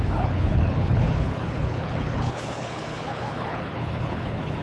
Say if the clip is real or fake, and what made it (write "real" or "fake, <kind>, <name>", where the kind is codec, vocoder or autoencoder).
fake, codec, HILCodec